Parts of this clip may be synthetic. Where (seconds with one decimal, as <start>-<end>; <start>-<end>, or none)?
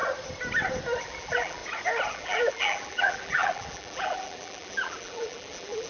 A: 1.0-1.6; 2.1-5.9